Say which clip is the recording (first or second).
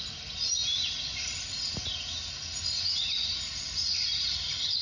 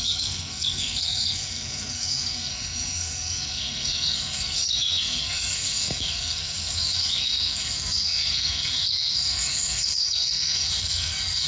first